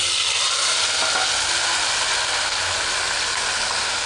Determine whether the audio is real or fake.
real